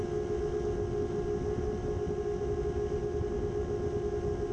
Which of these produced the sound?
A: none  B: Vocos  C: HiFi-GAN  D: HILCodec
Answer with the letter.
A